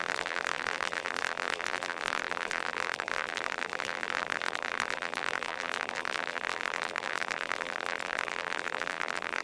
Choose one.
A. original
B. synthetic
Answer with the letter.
B